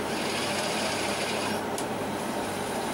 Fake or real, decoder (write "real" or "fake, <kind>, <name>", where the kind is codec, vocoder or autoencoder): fake, vocoder, BigVGAN v2